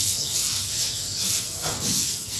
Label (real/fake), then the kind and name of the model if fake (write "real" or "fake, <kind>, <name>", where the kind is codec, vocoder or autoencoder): fake, codec, SNAC